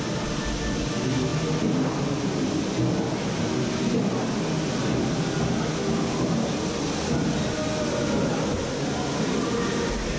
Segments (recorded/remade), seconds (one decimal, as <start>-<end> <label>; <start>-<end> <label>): 0.0-10.2 recorded